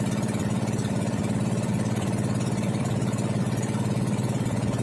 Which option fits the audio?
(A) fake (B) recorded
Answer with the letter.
A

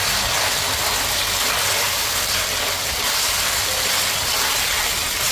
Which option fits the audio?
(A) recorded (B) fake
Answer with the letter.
A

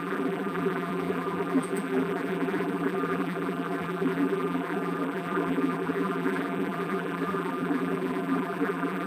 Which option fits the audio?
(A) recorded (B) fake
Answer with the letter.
B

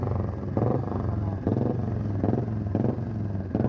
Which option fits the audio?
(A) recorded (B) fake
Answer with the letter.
A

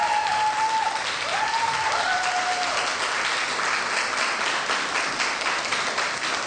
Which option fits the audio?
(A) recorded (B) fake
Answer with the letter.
A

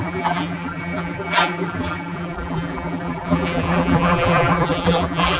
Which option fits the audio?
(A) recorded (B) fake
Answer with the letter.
B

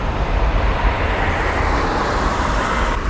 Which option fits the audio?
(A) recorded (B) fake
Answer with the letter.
B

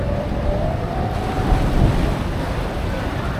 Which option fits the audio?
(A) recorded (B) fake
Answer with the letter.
B